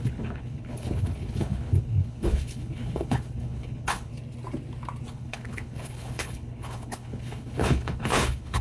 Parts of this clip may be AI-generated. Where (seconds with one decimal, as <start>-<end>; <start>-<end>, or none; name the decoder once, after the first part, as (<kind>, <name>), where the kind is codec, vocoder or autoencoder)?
0.0-4.1 (codec, HILCodec); 5.1-8.6